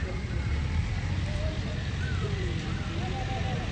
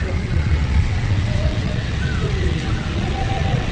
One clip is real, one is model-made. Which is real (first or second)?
first